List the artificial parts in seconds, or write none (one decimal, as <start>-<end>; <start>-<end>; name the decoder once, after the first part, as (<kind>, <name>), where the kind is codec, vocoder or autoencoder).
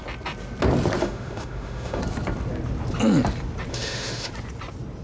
1.0-2.0 (autoencoder, DAC-VAE); 3.7-4.3